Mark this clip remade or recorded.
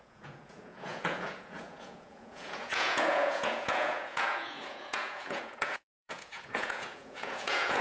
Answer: remade